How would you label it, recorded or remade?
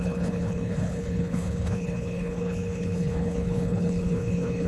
remade